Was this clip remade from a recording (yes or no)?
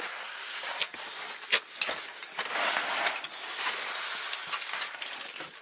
no